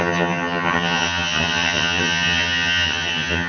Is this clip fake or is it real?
fake